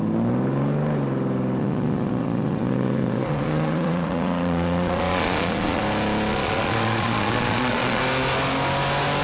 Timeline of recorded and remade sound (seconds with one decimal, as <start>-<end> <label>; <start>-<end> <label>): 0.0-1.6 recorded; 1.6-5.8 remade; 5.8-6.3 recorded; 6.3-8.0 remade; 8.0-9.2 recorded